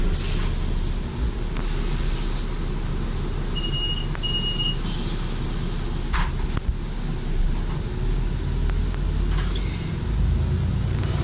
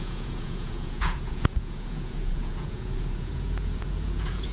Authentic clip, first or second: first